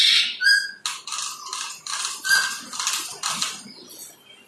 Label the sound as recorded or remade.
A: recorded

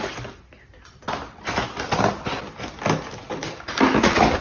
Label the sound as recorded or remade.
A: recorded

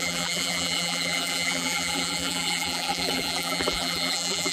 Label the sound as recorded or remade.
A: remade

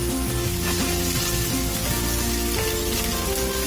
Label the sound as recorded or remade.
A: recorded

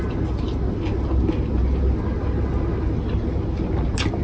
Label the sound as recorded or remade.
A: recorded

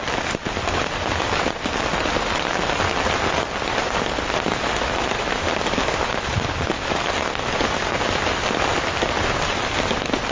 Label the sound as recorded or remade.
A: remade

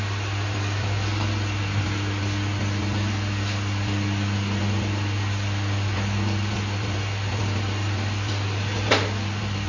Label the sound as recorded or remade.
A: recorded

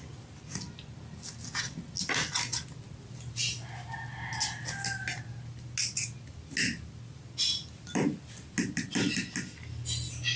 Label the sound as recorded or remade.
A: recorded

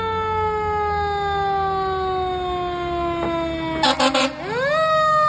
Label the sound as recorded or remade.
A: recorded